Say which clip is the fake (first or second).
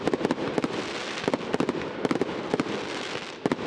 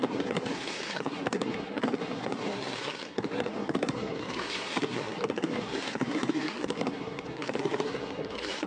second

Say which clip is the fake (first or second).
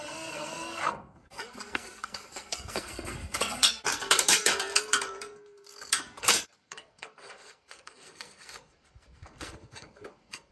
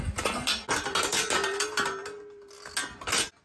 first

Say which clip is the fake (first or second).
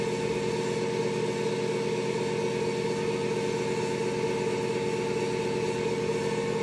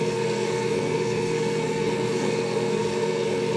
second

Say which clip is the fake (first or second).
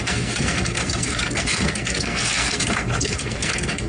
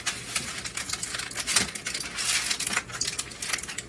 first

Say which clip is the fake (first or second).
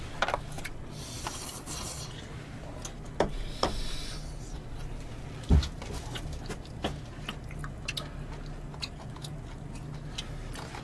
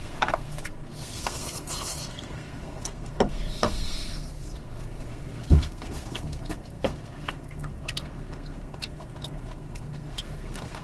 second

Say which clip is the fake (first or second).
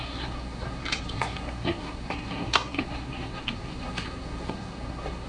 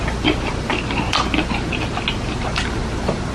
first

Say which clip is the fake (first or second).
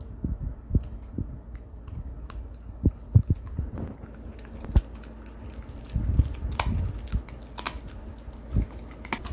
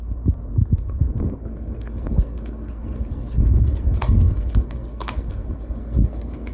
second